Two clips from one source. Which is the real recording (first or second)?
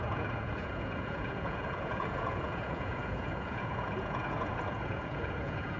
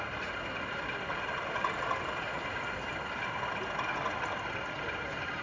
second